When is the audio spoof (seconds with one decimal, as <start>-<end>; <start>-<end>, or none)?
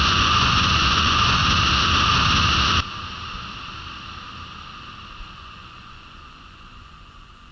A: 0.0-1.4; 5.2-7.5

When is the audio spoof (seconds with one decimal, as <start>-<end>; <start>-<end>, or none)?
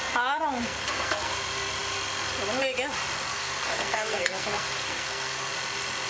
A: 0.6-1.3; 3.3-5.5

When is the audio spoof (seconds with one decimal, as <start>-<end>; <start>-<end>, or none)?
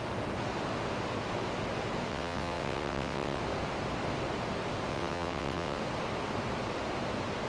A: 2.1-3.4; 4.9-5.8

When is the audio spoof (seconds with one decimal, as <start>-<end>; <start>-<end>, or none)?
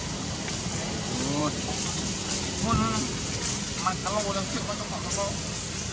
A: 1.4-2.0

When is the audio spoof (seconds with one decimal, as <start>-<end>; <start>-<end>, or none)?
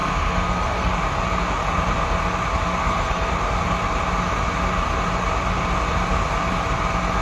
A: 0.0-0.9; 2.8-3.3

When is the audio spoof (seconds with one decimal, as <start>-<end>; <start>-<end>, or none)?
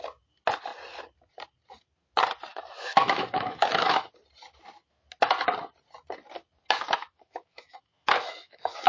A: 2.5-4.1; 7.0-8.9